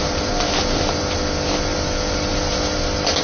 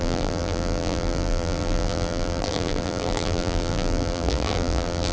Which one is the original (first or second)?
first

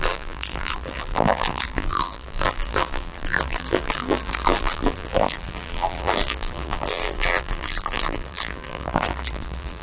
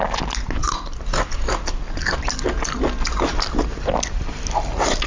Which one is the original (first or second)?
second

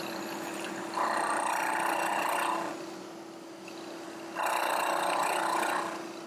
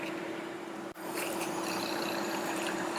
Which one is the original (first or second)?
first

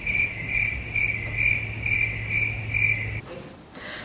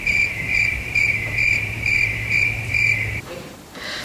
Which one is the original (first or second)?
first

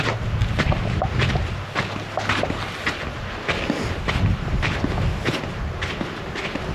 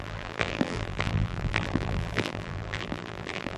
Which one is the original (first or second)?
first